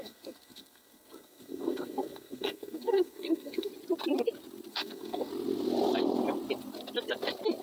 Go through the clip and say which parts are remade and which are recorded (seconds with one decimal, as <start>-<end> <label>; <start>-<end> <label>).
0.0-3.7 remade; 3.7-4.7 recorded; 4.7-5.3 remade; 5.3-7.6 recorded